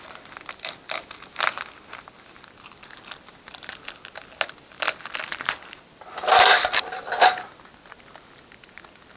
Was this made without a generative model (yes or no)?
yes